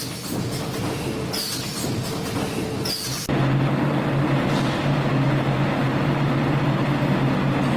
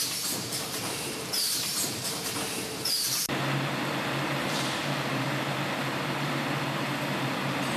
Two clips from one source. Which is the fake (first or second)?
second